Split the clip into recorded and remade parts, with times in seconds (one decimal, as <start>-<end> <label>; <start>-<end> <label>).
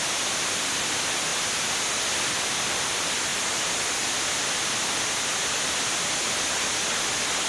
0.0-7.5 recorded